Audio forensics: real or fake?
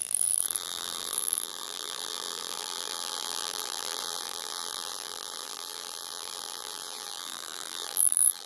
fake